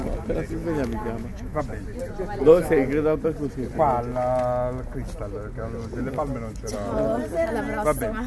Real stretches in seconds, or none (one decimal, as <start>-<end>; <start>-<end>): 0.0-0.6; 1.6-2.5; 3.2-8.3